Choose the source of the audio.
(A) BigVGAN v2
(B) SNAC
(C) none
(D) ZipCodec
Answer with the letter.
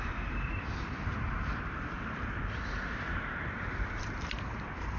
A